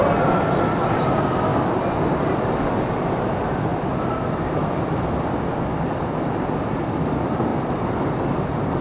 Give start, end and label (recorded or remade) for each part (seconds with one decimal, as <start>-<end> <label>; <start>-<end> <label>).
0.0-8.8 recorded

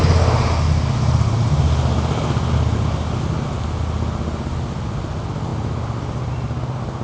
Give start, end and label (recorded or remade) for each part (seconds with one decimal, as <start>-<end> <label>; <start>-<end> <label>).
0.0-7.0 recorded